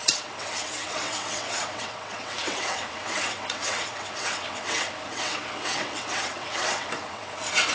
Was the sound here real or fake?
fake